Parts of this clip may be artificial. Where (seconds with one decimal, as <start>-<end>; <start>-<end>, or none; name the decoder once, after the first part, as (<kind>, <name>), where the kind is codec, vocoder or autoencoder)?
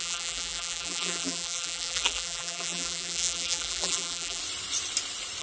0.0-4.4 (vocoder, BigVGAN v2)